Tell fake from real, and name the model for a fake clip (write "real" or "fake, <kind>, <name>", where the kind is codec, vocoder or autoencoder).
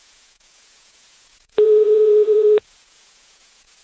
fake, vocoder, Vocos